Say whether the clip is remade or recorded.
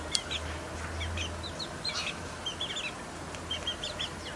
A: recorded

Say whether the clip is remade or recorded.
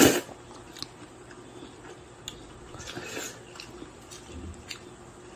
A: recorded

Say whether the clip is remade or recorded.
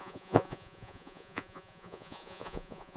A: remade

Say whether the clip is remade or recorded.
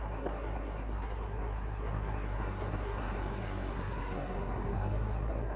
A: remade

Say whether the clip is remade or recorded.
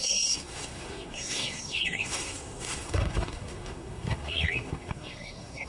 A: remade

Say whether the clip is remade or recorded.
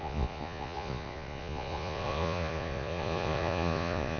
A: remade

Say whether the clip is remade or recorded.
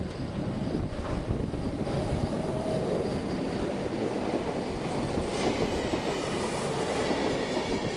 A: recorded